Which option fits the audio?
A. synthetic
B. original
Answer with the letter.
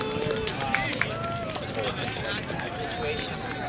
B